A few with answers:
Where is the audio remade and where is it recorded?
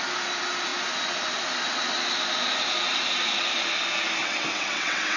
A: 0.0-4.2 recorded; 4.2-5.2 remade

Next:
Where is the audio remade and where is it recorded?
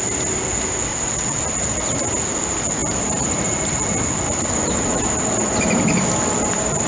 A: 0.0-0.9 recorded; 0.9-1.4 remade; 1.4-6.9 recorded